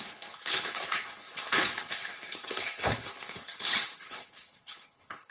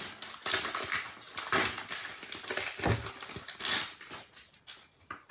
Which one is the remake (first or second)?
first